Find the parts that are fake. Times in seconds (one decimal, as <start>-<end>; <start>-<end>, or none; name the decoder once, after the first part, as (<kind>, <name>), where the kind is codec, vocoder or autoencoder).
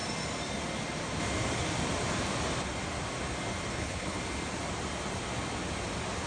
3.7-4.2 (codec, HILCodec)